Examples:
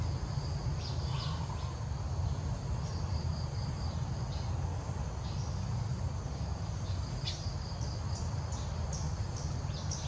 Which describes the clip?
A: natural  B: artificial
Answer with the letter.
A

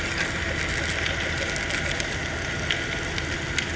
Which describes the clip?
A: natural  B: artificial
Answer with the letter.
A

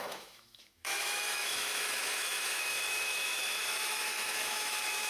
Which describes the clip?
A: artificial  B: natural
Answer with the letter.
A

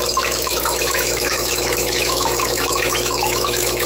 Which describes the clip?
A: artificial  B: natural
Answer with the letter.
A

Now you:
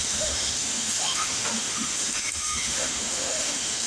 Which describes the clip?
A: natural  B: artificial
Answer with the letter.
B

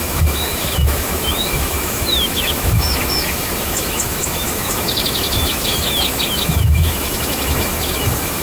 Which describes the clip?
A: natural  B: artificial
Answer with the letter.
B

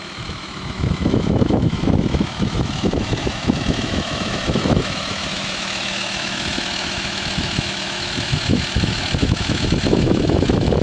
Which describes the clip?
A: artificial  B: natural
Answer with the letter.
A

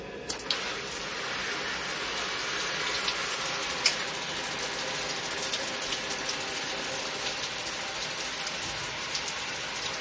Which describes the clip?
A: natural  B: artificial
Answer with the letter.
A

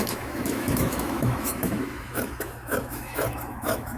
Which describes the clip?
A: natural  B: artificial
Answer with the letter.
B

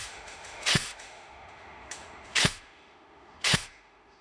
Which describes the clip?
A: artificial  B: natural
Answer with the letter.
A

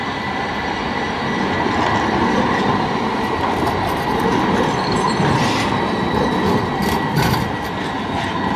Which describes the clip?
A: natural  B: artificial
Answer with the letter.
A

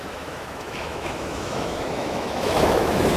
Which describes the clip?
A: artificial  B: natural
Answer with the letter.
A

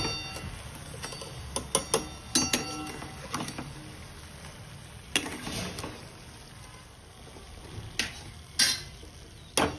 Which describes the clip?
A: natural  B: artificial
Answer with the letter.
A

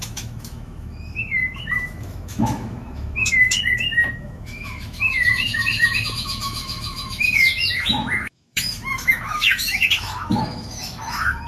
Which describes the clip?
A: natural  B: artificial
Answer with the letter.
B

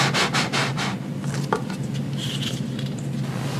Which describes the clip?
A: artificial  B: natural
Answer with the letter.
B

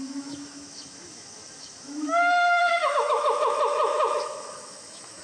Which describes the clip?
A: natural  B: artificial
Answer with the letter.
B